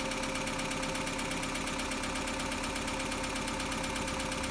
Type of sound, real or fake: fake